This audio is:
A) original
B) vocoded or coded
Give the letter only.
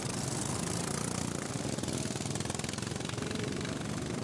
A